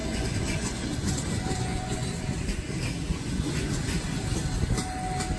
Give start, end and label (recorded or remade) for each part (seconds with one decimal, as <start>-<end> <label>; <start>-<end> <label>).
0.0-2.2 remade; 2.2-3.1 recorded; 3.1-3.7 remade; 3.7-5.4 recorded